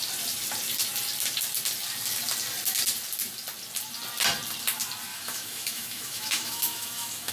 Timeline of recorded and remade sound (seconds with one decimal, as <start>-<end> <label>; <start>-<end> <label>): 0.0-5.1 recorded; 5.1-7.3 remade